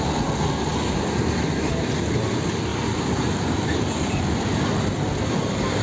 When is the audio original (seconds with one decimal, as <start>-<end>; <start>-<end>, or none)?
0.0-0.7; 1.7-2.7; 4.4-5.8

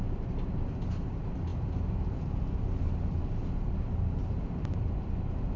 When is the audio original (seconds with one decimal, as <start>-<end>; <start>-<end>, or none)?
0.0-5.6

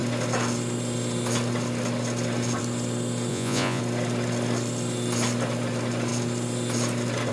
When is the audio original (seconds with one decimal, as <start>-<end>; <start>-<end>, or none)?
0.0-3.3; 3.8-7.3